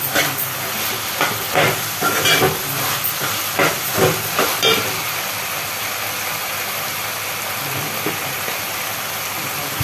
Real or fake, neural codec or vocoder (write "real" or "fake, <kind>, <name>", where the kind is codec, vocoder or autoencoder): real